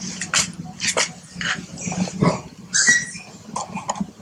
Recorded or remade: recorded